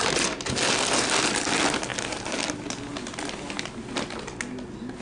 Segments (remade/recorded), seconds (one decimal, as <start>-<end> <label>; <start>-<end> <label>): 0.0-5.0 recorded